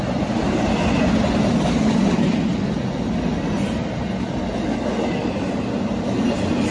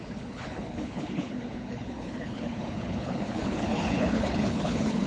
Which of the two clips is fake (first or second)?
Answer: second